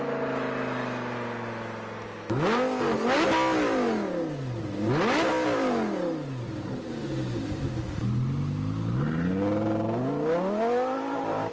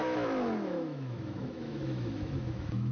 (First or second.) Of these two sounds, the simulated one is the second